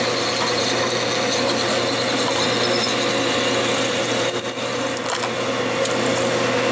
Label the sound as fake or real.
real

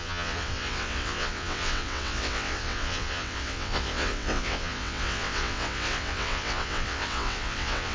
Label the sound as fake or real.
fake